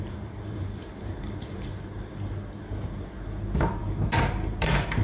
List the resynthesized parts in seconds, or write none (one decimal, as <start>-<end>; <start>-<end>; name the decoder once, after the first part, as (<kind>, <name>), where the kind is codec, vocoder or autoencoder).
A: 0.0-1.7 (vocoder, BigVGAN v2); 3.8-5.0